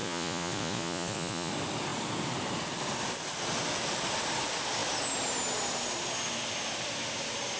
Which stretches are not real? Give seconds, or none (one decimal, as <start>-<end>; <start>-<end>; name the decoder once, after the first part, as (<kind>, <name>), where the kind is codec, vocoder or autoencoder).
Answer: 0.0-1.5 (vocoder, Vocos)